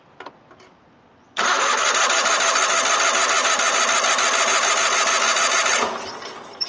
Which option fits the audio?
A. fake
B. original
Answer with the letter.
B